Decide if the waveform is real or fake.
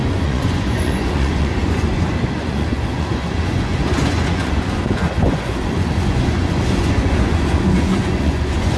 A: fake